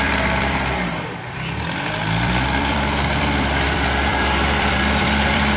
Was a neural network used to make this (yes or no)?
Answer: yes